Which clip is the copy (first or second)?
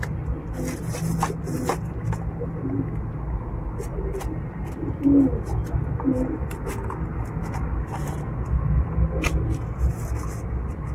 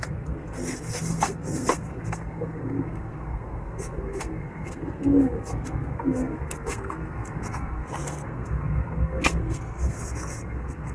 second